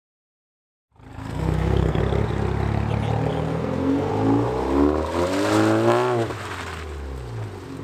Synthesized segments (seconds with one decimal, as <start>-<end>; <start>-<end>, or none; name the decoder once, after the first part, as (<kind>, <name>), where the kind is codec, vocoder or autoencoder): 1.1-2.0 (codec, SNAC); 3.3-4.1